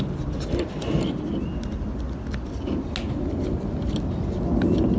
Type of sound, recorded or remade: recorded